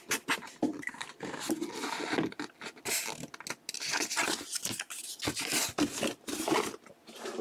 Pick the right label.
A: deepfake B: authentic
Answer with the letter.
B